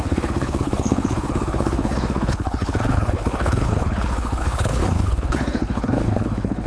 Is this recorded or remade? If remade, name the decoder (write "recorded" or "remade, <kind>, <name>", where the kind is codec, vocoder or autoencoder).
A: remade, codec, HILCodec